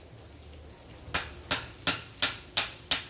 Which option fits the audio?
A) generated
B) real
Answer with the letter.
B